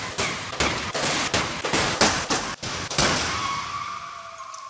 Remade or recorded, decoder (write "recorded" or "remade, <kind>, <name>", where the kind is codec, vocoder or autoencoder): recorded